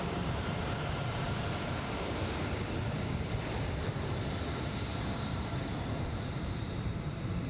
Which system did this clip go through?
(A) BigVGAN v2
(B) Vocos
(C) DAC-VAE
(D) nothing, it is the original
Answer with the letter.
A